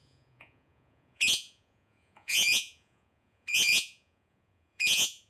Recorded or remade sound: remade